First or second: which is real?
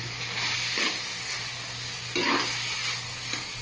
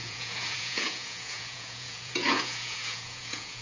first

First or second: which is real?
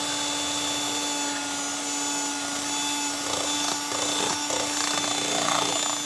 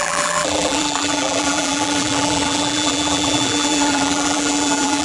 first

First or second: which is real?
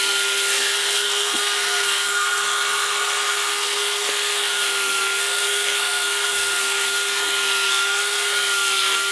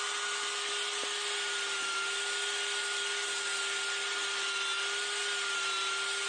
second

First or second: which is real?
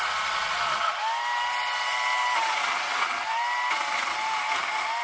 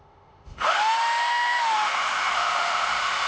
first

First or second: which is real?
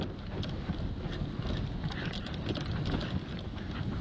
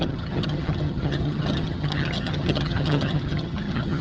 first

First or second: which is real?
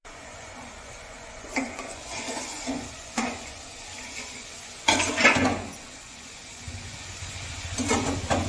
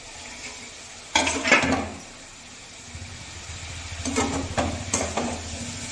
second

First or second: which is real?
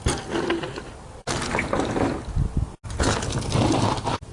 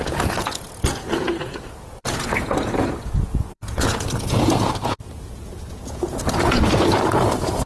first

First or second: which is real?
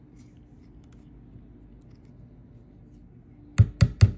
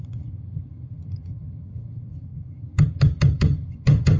first